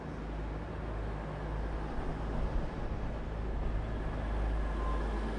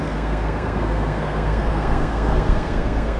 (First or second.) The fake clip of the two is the second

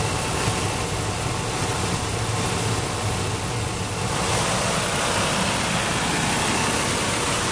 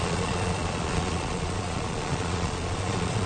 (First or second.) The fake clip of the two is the second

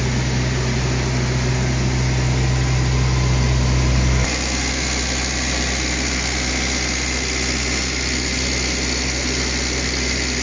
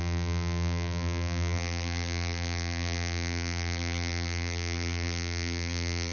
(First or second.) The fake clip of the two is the second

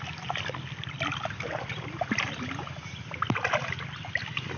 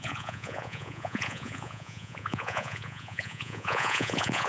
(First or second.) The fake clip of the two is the second